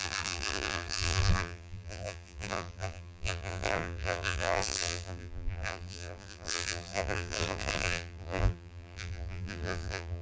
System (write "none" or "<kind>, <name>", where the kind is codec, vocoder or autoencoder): vocoder, BigVGAN v2